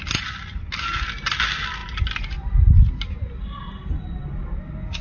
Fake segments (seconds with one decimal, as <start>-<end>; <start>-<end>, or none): none